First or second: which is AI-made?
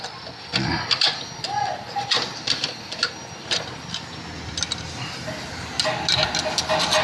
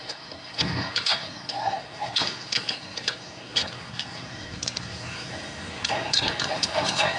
second